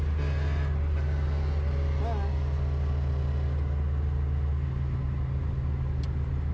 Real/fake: real